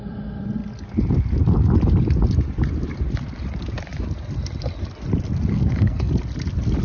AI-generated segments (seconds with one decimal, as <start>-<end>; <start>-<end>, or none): 5.5-6.1